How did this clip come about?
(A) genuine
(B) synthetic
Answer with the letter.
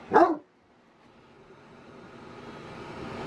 A